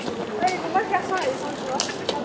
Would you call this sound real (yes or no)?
yes